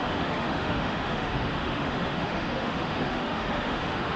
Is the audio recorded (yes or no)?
no